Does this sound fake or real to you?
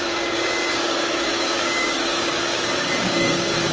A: fake